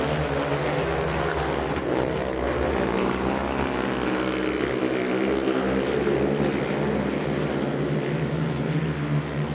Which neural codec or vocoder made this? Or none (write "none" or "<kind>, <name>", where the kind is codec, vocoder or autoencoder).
none